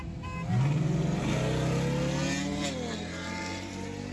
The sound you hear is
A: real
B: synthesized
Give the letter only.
A